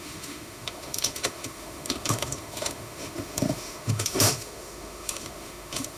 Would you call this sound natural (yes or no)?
no